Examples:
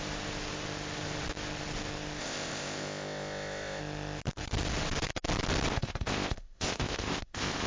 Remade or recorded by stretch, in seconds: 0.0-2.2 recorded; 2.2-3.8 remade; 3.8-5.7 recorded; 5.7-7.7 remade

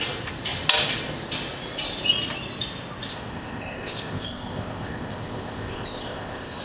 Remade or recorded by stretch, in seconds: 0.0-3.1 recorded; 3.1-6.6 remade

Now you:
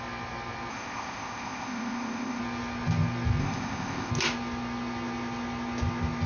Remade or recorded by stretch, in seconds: 0.0-0.7 recorded; 0.7-2.4 remade; 2.4-3.4 recorded; 3.4-4.1 remade; 4.1-6.3 recorded

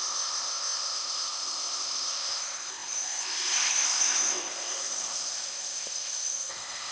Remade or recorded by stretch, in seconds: 0.0-6.9 remade